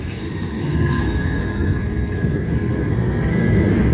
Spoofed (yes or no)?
yes